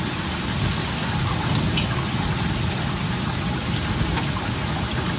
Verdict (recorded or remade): recorded